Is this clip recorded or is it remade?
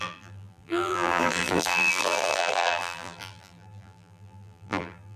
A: remade